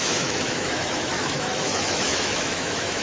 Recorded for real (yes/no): no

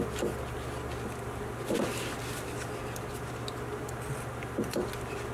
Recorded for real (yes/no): yes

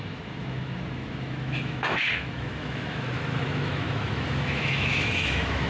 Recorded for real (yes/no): no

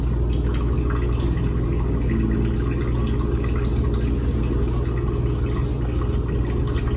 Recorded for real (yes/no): yes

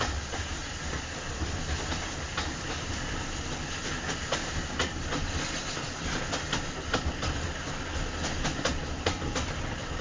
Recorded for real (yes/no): yes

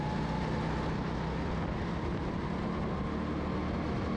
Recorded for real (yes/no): yes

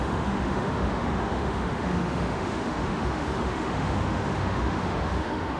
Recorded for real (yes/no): no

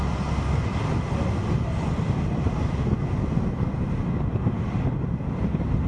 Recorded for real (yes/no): yes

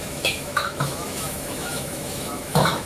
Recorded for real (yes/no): no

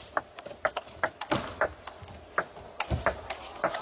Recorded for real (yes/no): yes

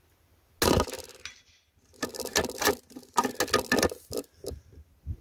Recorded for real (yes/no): yes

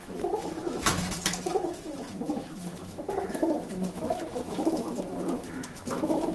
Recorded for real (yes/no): no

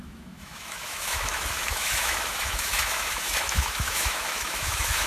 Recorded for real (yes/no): no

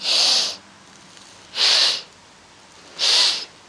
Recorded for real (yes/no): yes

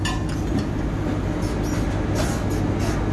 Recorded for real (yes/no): yes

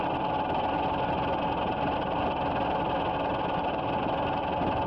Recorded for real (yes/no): yes